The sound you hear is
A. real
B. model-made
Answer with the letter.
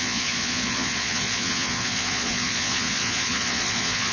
B